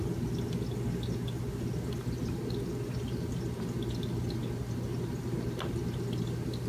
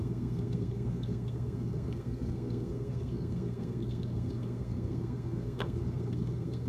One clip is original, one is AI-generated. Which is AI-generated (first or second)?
second